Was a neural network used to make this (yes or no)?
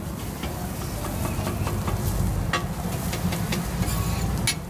no